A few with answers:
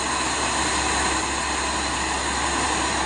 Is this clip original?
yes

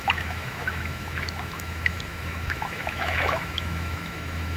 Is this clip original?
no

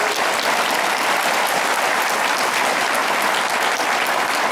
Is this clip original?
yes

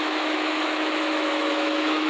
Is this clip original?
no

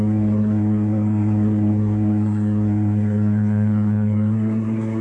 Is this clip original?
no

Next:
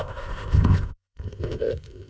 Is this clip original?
no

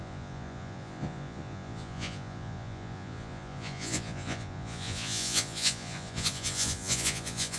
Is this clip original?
no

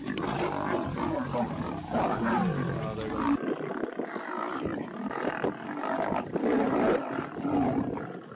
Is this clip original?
yes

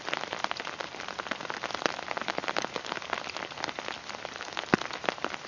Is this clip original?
yes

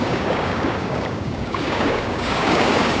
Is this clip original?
no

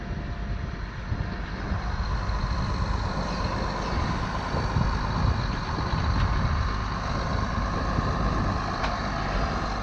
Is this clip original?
yes